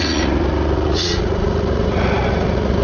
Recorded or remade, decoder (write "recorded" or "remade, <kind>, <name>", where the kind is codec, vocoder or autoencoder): remade, vocoder, Vocos